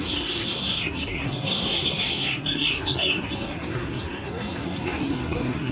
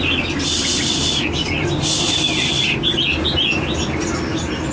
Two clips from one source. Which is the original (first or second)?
second